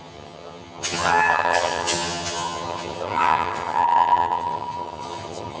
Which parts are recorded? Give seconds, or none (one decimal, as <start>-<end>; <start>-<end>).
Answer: none